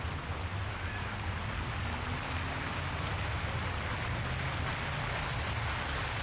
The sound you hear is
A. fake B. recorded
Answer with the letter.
B